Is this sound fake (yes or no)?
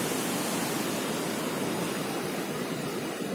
no